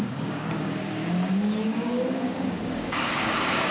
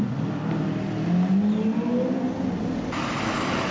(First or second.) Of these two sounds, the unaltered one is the second